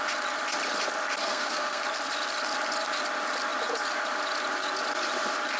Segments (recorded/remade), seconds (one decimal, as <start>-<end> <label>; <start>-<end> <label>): 0.0-1.2 recorded; 1.2-1.8 remade; 1.8-5.6 recorded